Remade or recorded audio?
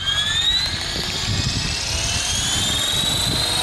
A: recorded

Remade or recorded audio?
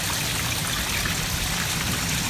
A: recorded